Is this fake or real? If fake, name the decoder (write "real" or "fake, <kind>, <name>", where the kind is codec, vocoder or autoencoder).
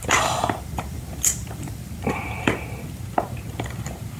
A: real